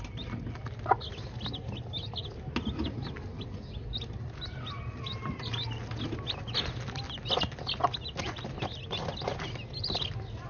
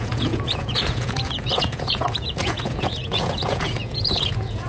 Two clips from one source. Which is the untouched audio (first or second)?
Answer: first